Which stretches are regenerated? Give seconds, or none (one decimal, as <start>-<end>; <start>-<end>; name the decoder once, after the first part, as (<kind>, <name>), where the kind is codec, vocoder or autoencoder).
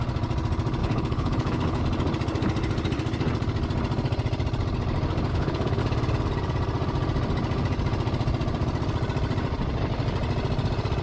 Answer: 0.8-1.8 (codec, HILCodec); 5.3-5.8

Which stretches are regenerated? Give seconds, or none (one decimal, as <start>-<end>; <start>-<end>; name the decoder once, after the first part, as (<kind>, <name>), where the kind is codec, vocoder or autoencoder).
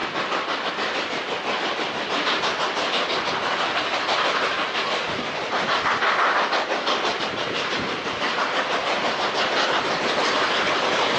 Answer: none